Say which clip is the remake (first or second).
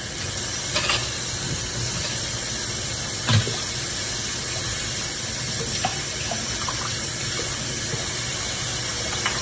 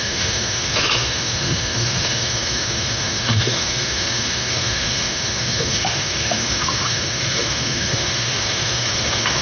second